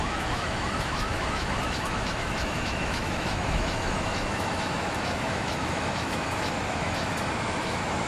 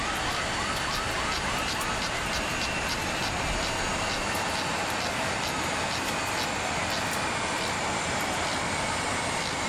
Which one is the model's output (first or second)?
first